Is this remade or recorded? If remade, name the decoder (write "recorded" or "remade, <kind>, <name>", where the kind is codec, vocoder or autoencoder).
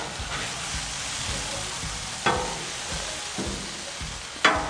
recorded